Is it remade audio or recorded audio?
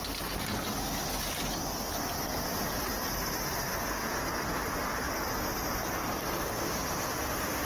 recorded